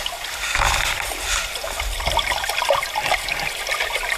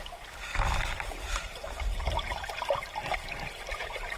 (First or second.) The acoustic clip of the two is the first